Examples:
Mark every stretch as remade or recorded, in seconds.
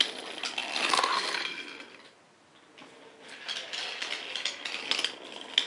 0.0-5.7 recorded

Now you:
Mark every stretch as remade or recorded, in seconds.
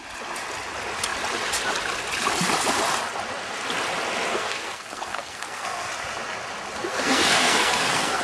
0.0-4.3 recorded; 4.3-5.9 remade; 5.9-6.8 recorded; 6.8-8.2 remade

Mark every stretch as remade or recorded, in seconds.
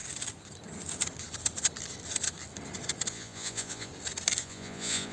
0.0-3.1 recorded; 3.1-3.9 remade; 3.9-4.4 recorded; 4.4-5.1 remade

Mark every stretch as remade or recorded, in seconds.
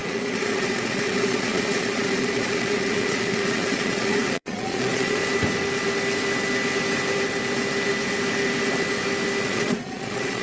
0.0-5.2 remade; 5.2-9.4 recorded; 9.4-10.4 remade